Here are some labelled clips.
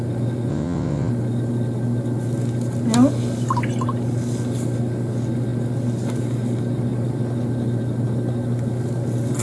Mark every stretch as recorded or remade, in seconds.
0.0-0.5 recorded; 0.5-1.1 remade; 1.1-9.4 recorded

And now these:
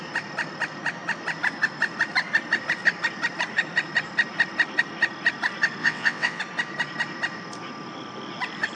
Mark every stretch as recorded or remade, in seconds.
0.0-5.8 recorded; 5.8-6.4 remade; 6.4-8.8 recorded

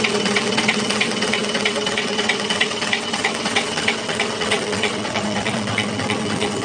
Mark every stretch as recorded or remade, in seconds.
0.0-6.6 remade

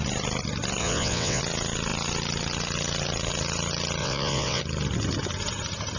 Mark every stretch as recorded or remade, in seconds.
0.0-0.8 recorded; 0.8-1.4 remade; 1.4-4.0 recorded; 4.0-4.6 remade; 4.6-6.0 recorded